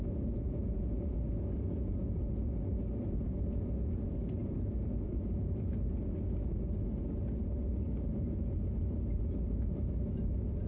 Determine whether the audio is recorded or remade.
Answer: remade